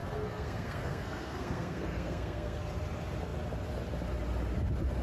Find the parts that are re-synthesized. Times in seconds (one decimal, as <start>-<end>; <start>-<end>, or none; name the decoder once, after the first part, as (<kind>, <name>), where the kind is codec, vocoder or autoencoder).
0.0-2.6 (codec, SNAC)